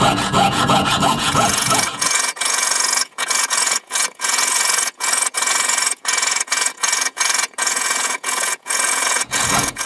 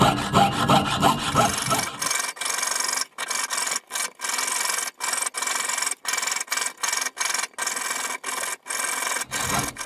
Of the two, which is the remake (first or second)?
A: first